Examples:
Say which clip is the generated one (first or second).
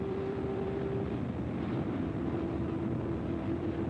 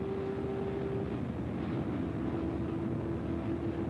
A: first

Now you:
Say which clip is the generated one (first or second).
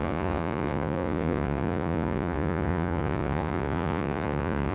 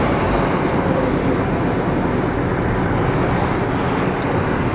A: first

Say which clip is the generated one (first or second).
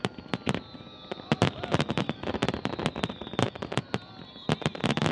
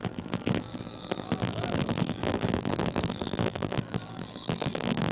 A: second